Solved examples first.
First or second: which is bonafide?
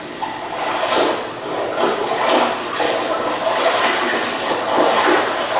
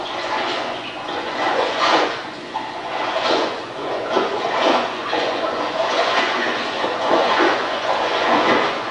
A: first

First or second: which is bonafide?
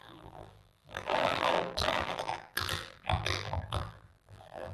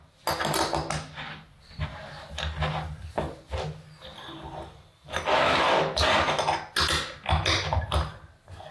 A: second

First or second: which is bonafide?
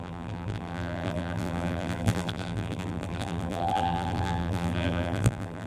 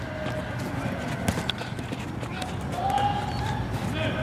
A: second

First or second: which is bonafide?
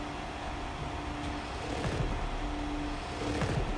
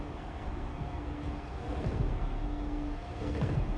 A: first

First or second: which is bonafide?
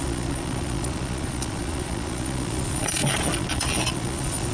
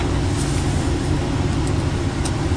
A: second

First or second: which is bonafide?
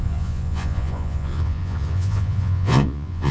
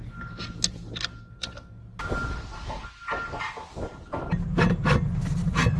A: second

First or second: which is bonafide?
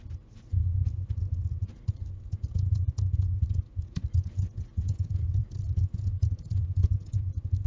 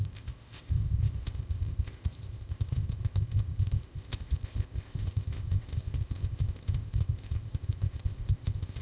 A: first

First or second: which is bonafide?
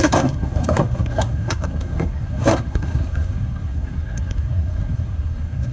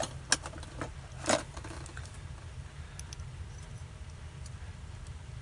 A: second